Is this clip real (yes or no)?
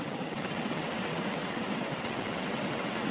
no